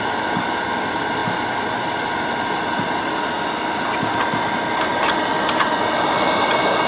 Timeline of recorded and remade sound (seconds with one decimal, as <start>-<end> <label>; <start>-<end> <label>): 0.0-4.9 recorded; 4.9-6.5 remade; 6.5-6.9 recorded